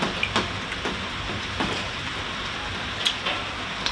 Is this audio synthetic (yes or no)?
no